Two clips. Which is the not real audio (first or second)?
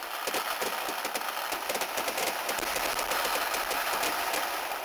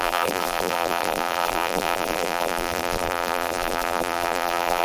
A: second